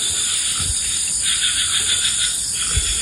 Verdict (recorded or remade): recorded